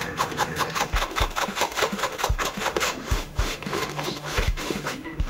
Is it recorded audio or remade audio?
remade